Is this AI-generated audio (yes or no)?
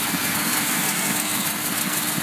yes